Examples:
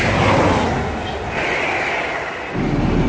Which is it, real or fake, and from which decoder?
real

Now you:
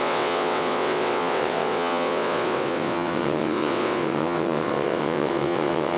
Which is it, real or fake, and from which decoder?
fake, vocoder, WaveNeXt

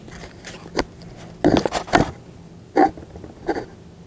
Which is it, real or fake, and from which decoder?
real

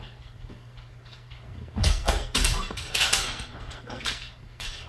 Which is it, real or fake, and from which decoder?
fake, codec, SNAC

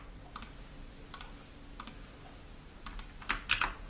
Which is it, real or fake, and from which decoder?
real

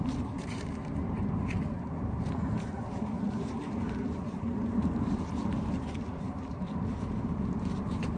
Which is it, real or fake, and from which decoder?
fake, vocoder, BigVGAN v2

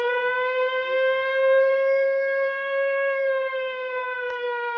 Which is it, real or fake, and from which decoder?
fake, codec, SNAC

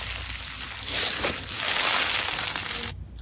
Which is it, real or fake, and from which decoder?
real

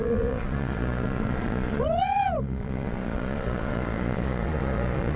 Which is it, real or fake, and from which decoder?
fake, vocoder, Vocos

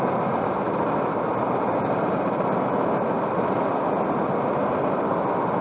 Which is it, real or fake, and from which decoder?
real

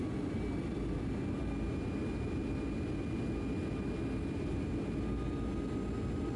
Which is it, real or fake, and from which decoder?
real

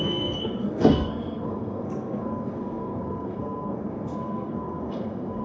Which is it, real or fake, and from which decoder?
fake, codec, SNAC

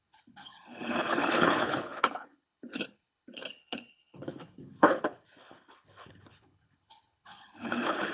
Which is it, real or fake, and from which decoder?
fake, codec, HILCodec